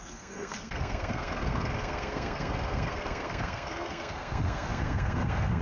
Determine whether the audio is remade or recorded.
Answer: remade